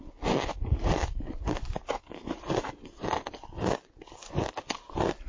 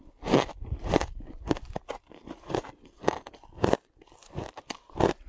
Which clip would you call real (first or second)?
first